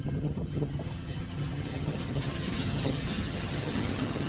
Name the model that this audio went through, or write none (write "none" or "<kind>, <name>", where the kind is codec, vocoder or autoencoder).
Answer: vocoder, HiFi-GAN